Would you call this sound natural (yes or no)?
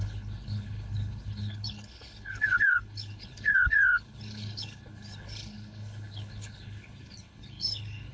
no